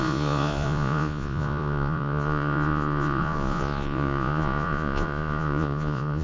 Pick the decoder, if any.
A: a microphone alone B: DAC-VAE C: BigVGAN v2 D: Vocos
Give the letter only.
D